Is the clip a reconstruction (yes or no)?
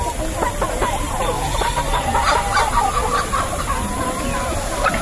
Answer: yes